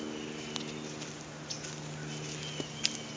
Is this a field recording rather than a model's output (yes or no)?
yes